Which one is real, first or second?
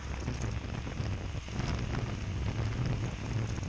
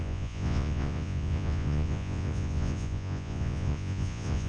first